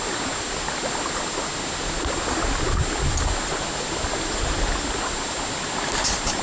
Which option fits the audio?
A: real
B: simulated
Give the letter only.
A